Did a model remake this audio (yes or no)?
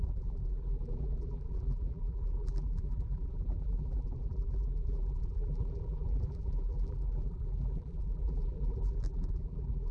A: yes